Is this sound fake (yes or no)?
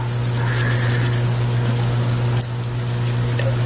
no